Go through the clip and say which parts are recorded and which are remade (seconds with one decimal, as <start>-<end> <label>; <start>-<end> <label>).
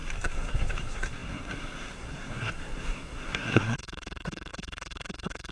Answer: 0.0-5.5 remade